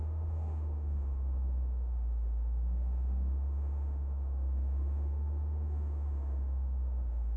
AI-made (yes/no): yes